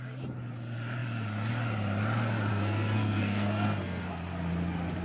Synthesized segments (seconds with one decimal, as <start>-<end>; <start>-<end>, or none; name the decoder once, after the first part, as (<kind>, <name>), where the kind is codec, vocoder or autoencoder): 2.5-4.1 (codec, SNAC)